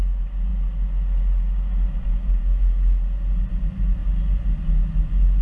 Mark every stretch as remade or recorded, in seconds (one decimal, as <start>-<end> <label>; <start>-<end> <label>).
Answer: 0.0-5.4 recorded